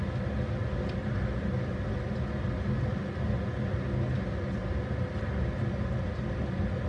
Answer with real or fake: real